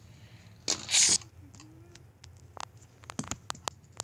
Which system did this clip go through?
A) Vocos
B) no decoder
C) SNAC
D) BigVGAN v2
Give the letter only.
B